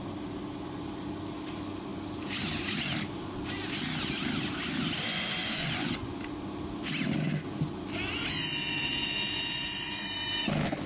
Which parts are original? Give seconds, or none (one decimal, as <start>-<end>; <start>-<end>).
0.0-5.1; 6.2-10.9